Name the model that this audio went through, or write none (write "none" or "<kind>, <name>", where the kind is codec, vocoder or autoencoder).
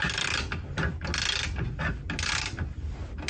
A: none